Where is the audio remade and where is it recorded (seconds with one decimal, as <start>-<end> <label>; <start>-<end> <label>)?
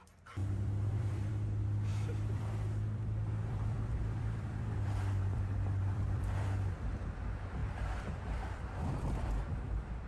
0.0-0.4 recorded; 0.4-1.3 remade; 1.3-1.9 recorded; 1.9-7.0 remade; 7.0-7.6 recorded; 7.6-9.5 remade; 9.5-10.1 recorded